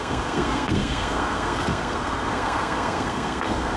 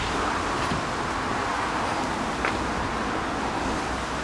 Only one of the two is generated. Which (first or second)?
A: first